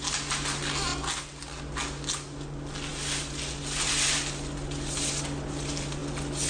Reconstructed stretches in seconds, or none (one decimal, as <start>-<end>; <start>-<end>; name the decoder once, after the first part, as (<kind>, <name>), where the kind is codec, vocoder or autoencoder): none